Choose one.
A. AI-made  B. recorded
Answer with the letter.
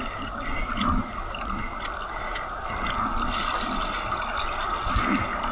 B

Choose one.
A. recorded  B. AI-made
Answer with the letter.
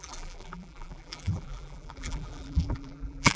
B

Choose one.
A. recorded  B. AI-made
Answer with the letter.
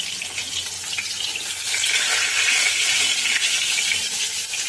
A